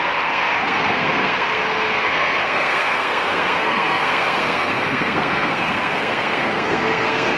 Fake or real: fake